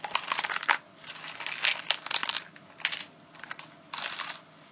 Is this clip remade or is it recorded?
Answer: recorded